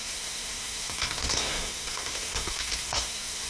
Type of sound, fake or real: fake